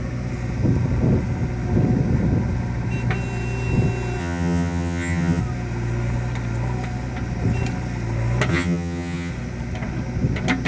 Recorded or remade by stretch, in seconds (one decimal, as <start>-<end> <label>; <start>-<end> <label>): 0.0-4.2 recorded; 4.2-5.4 remade; 5.4-8.5 recorded; 8.5-9.3 remade; 9.3-10.7 recorded